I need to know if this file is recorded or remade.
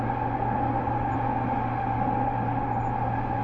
recorded